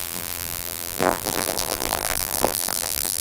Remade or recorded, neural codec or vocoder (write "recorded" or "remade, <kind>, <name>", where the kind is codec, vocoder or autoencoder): remade, vocoder, BigVGAN v2